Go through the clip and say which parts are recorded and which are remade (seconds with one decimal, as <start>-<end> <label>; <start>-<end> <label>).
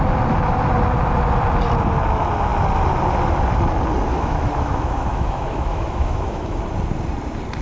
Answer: 0.0-4.1 recorded; 4.1-6.6 remade; 6.6-7.6 recorded